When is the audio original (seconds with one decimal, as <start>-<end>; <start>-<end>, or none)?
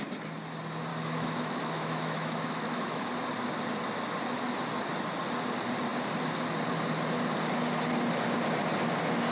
0.0-0.9; 3.1-9.3